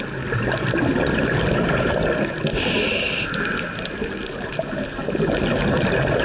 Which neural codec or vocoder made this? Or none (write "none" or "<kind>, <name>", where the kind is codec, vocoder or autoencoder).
none